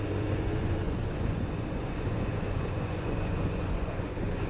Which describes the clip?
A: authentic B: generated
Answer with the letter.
B